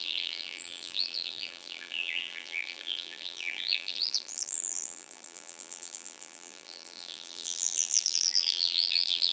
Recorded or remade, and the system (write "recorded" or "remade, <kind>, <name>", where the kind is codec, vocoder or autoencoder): remade, vocoder, BigVGAN v2